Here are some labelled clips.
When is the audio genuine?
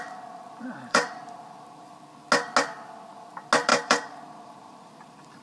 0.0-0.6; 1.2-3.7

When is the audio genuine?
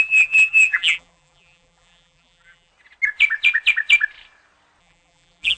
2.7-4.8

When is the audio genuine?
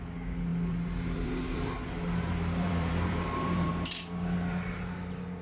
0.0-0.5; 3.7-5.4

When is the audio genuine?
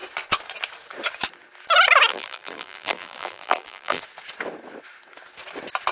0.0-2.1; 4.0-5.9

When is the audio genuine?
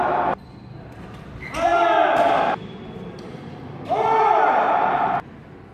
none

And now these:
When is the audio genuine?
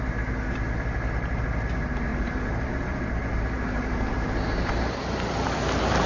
0.0-2.1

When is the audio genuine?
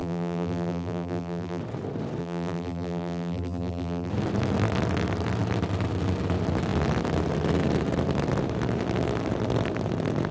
1.6-2.2; 4.1-10.3